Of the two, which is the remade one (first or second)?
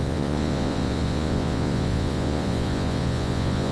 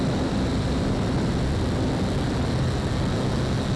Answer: first